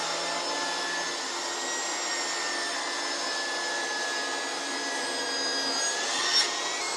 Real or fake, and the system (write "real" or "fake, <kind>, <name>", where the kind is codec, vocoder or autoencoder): real